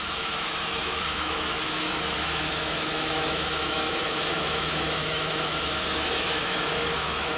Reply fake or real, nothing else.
fake